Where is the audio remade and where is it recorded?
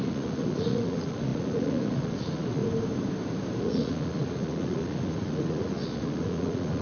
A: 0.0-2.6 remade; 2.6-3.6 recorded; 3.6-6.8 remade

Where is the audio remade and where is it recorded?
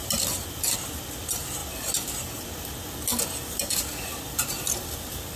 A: 0.0-5.4 recorded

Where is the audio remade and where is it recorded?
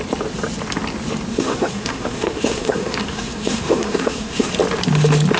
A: 0.0-1.3 recorded; 1.3-4.5 remade; 4.5-5.4 recorded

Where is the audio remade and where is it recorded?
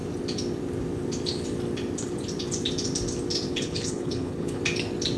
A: 0.0-3.5 recorded; 3.5-4.6 remade; 4.6-5.2 recorded